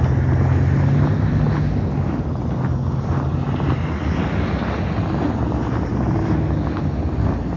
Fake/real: real